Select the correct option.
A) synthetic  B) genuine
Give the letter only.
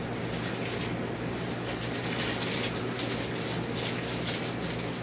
B